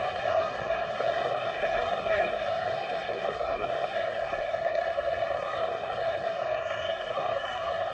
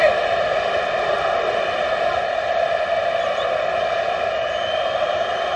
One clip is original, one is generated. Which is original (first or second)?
second